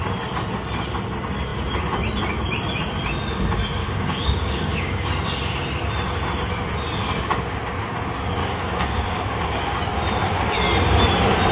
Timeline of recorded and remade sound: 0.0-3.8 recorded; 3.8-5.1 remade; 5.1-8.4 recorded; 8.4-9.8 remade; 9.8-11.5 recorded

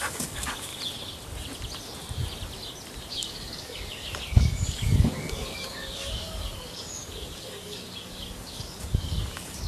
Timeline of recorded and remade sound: 0.0-0.7 remade; 0.7-3.1 recorded; 3.1-9.7 remade